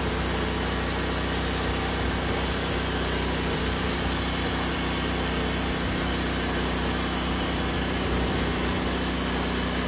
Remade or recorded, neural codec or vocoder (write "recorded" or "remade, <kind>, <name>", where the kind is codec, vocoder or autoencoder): recorded